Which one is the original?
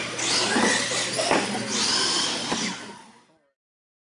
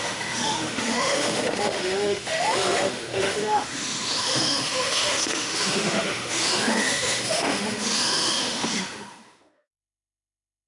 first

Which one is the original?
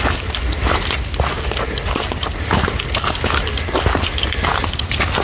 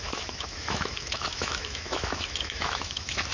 first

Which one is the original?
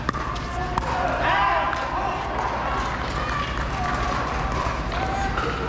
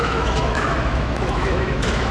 first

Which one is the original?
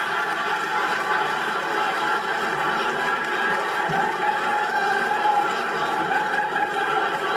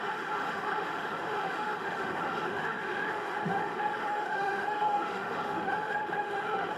first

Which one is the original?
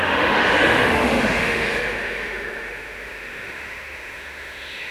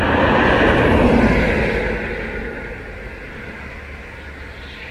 second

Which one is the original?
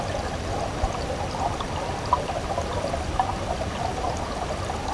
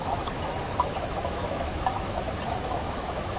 first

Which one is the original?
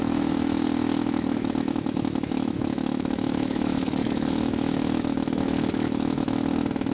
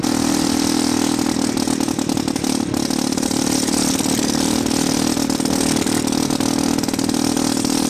second